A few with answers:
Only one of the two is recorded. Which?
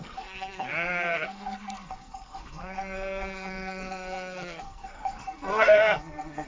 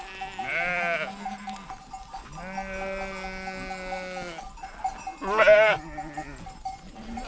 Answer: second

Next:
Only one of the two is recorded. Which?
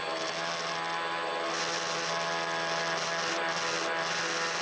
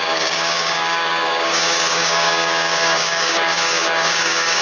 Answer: first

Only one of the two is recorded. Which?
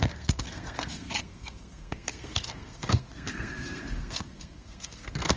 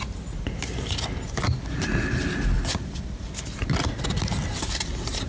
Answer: second